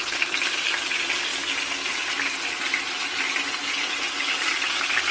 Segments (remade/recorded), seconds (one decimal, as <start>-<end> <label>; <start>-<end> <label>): 0.0-5.1 recorded